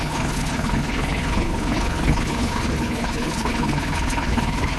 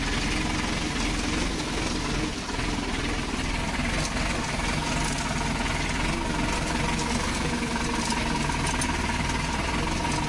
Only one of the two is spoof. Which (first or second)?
first